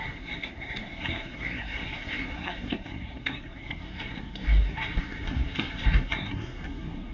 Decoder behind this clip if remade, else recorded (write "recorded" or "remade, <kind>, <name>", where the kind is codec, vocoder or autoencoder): remade, codec, SNAC